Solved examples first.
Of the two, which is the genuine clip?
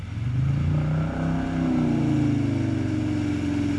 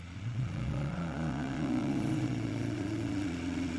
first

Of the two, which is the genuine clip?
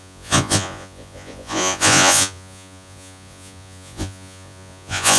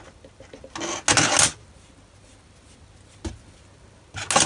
second